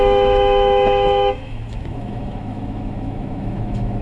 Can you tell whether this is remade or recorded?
remade